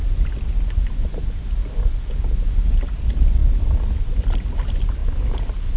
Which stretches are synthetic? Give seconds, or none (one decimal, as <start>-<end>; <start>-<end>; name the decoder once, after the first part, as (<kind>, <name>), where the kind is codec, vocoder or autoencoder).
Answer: none